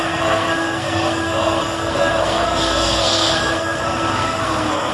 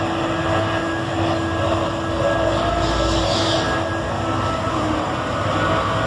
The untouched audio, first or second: second